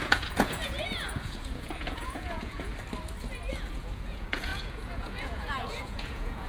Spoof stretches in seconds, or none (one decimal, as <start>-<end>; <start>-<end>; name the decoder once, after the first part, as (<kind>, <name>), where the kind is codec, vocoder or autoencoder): 0.0-2.7 (vocoder, Vocos); 3.7-6.5